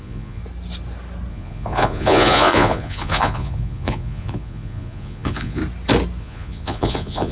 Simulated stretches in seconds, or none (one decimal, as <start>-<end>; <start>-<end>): 0.0-0.4; 1.3-5.6; 6.2-7.3